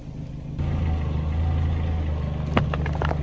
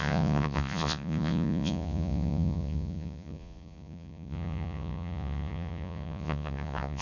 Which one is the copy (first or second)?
second